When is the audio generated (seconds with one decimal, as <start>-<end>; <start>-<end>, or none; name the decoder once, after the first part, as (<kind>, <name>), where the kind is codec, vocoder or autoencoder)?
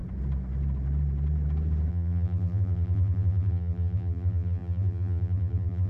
1.9-5.9 (vocoder, BigVGAN v2)